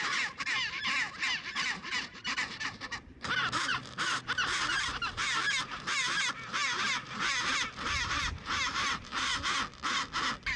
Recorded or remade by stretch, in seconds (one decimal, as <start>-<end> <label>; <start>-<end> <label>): 0.0-9.3 remade; 9.3-10.6 recorded